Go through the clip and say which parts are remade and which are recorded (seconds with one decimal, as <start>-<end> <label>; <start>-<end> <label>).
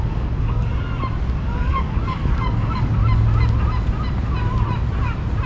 0.0-0.7 remade; 0.7-1.4 recorded; 1.4-3.0 remade; 3.0-5.5 recorded